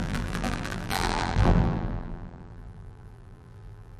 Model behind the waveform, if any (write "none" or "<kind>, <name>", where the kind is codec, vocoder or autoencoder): vocoder, BigVGAN v2